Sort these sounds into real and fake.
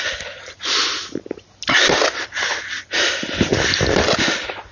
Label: real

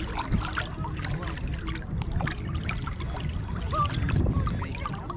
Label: real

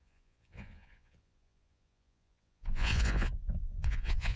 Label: fake